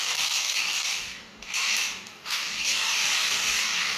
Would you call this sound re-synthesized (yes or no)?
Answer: yes